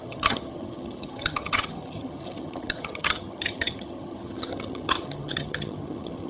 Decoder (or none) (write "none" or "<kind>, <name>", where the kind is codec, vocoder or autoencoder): vocoder, HiFi-GAN